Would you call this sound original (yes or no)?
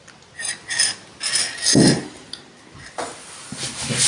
yes